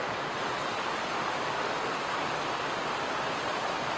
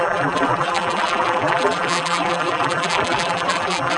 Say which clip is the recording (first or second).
first